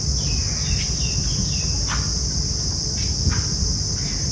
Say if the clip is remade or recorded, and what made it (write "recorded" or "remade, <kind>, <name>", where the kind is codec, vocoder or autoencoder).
recorded